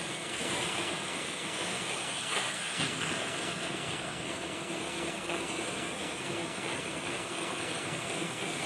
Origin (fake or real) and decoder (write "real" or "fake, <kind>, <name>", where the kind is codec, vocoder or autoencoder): fake, codec, SNAC